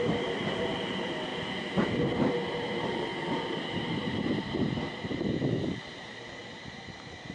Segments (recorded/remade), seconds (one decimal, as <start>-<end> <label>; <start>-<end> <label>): 0.0-1.3 remade; 1.3-2.3 recorded; 2.3-7.3 remade